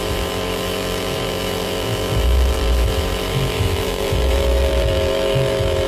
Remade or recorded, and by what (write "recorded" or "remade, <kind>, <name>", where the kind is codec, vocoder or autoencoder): remade, vocoder, BigVGAN v2